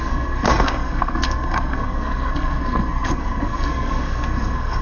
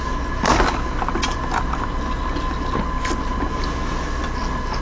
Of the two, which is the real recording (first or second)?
second